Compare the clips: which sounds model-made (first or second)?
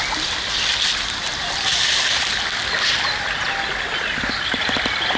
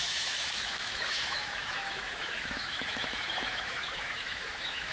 second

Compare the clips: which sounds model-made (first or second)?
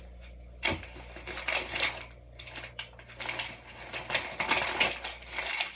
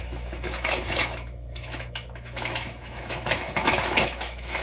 second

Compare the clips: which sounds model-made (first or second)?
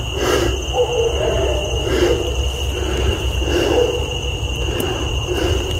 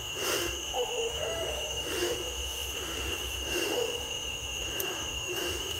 second